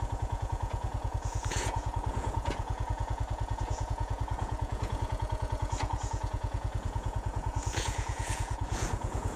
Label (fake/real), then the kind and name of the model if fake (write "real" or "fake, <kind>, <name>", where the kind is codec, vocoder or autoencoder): fake, vocoder, Vocos